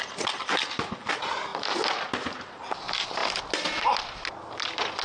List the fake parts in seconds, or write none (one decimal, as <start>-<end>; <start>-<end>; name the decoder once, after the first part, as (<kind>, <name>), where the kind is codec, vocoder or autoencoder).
none